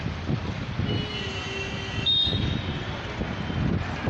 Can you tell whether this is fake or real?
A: real